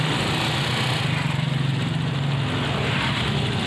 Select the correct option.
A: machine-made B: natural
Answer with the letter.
B